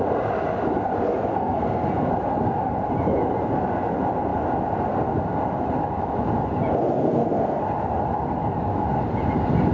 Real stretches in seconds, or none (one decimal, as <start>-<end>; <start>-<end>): 0.0-1.3; 2.1-7.0; 7.6-9.7

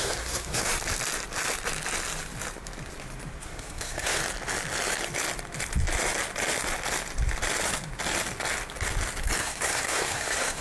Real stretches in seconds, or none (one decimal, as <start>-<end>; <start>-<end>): 0.7-3.4; 4.2-9.4